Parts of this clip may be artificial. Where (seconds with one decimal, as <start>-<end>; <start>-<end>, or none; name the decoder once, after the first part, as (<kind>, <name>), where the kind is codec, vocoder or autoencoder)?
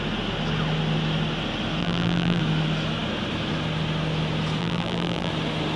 1.8-2.4 (vocoder, BigVGAN v2); 4.6-5.3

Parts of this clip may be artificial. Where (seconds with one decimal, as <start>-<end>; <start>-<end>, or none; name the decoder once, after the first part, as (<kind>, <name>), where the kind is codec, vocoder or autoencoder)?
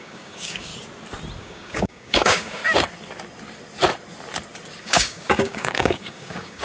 0.0-0.7 (codec, DAC); 1.4-2.6; 4.8-6.6